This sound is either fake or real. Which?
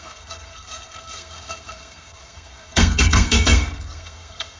fake